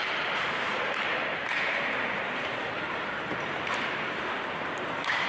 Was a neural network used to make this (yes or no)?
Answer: yes